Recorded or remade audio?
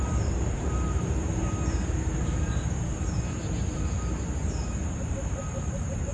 remade